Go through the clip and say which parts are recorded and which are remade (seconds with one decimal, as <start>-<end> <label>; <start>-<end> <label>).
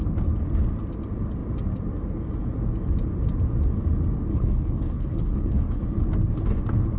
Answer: 0.0-4.3 recorded; 4.3-5.8 remade; 5.8-7.0 recorded